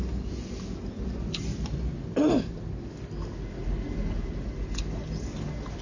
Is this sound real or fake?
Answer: real